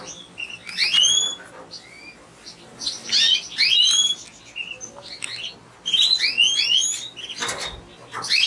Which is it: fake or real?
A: real